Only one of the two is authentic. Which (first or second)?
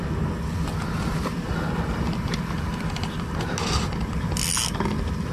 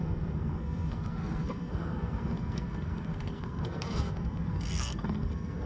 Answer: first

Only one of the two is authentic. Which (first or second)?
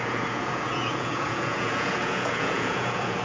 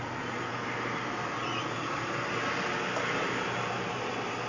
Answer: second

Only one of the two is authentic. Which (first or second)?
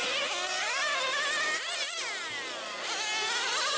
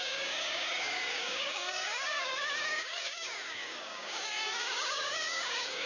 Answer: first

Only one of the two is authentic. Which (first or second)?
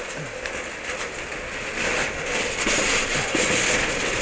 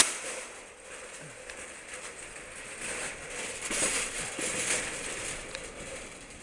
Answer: first